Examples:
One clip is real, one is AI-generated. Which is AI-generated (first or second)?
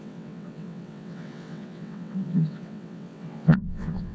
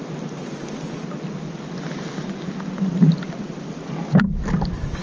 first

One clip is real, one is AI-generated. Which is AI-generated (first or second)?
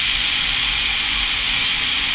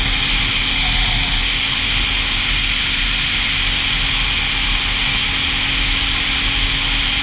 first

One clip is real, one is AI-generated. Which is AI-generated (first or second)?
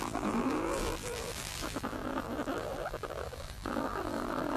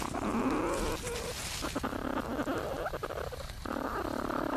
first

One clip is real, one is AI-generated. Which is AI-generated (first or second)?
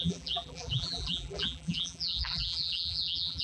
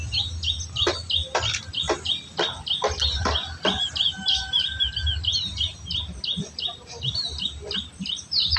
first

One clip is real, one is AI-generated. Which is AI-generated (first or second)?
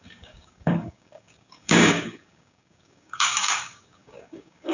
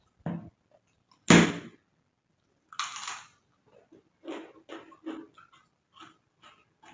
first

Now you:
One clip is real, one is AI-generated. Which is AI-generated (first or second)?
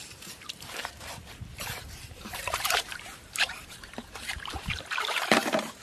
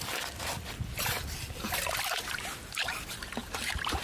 first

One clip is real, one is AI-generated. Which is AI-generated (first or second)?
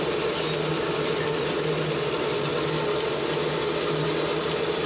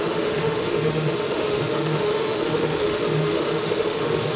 second